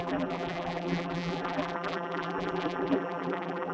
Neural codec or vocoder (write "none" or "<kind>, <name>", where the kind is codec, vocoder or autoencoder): vocoder, BigVGAN v2